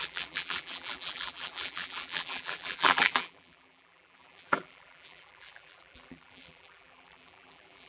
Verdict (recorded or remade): remade